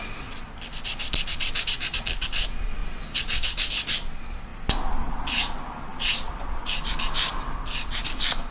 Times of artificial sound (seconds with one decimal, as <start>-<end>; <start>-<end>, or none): none